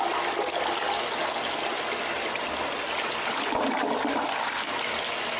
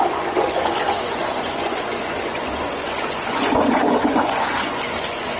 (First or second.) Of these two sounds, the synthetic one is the second